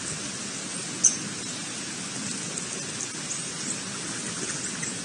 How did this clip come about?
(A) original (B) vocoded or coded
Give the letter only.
A